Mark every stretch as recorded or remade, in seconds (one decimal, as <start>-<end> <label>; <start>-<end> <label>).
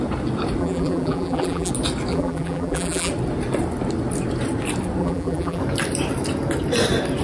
0.0-0.6 recorded; 0.6-1.7 remade; 1.7-2.1 recorded; 2.1-3.1 remade; 3.1-5.0 recorded; 5.0-5.6 remade; 5.6-7.2 recorded